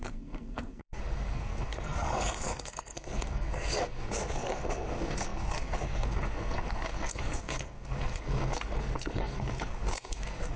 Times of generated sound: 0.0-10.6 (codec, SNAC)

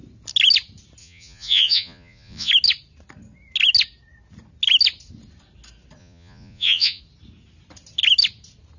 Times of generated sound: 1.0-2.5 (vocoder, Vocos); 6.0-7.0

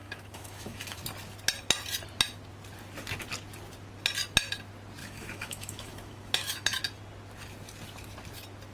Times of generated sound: 0.0-1.0 (autoencoder, DAC-VAE); 5.0-6.8

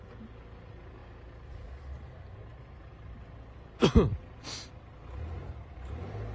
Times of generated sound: none

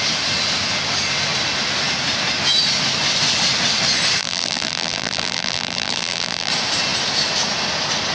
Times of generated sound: 4.2-6.5 (vocoder, BigVGAN v2)